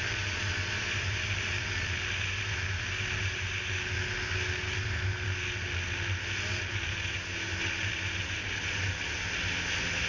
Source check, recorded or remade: recorded